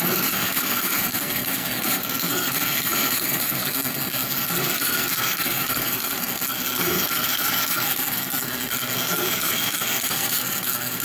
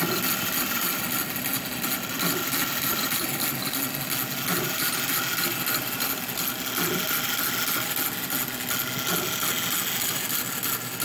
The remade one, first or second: first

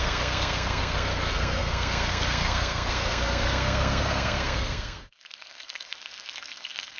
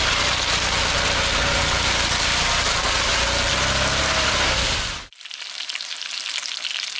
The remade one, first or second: first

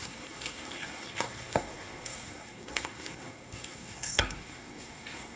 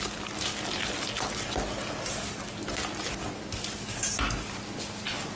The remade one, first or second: first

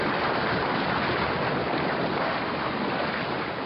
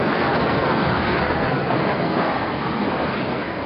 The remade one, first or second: second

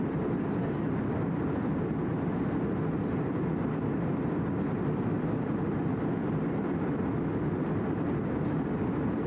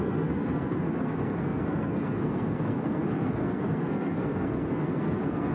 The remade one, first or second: second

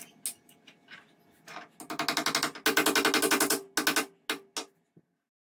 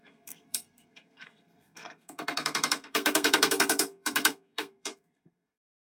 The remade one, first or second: second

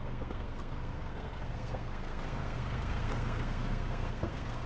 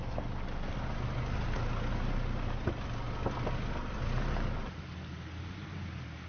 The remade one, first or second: first